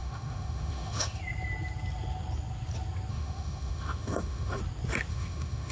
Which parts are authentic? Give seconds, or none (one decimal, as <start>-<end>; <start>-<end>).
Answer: 1.2-3.1; 4.6-5.1